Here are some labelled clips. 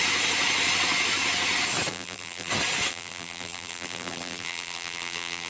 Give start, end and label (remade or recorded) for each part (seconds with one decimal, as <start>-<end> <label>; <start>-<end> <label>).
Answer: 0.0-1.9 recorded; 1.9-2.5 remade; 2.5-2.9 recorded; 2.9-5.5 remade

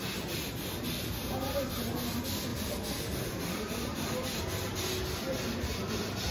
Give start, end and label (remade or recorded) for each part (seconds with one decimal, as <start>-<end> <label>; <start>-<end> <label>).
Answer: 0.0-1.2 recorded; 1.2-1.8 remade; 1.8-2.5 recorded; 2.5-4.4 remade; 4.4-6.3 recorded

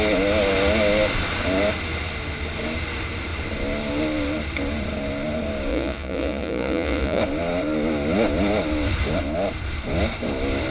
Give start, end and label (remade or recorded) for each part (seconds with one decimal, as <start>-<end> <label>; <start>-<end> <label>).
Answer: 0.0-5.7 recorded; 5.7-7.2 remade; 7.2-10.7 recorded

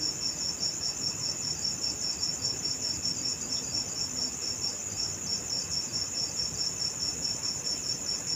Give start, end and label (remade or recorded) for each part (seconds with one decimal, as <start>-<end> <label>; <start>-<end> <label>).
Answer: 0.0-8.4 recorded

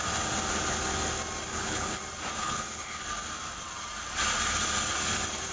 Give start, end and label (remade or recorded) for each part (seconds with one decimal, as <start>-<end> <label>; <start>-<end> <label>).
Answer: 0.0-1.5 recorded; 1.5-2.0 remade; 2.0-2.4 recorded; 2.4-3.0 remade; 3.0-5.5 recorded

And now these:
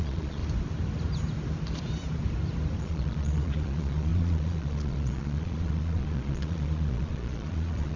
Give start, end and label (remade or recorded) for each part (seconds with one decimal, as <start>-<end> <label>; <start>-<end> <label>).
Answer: 0.0-0.4 remade; 0.4-2.8 recorded; 2.8-8.0 remade

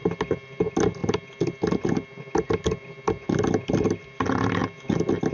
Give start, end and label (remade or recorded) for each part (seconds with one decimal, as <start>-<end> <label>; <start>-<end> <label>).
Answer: 0.0-5.3 recorded

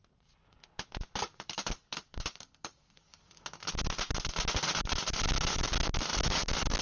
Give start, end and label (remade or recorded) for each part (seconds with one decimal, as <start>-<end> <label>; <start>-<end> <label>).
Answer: 0.0-1.3 recorded; 1.3-3.7 remade; 3.7-6.8 recorded